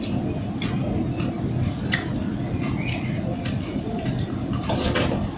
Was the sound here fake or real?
real